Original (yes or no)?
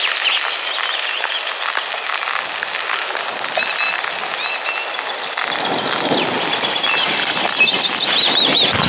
yes